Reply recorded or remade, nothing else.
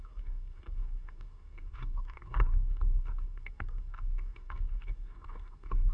remade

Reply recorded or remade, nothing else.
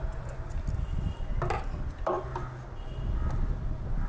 recorded